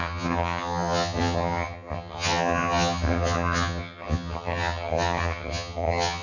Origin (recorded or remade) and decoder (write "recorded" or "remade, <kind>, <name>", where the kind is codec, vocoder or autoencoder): remade, vocoder, HiFi-GAN